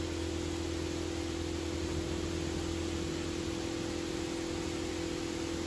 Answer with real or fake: real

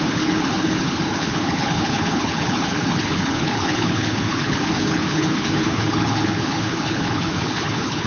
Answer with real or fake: fake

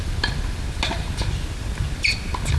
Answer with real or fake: real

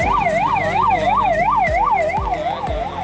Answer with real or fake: real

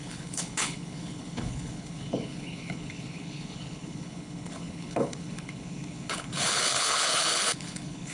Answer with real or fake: fake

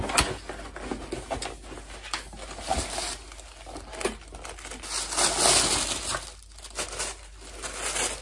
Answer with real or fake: real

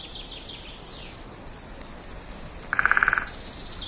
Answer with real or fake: real